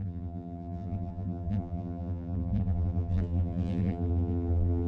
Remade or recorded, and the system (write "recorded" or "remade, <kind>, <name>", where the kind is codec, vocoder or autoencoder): remade, vocoder, BigVGAN v2